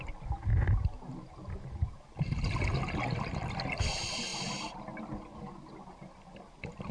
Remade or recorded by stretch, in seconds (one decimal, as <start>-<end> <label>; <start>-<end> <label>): 0.0-6.9 recorded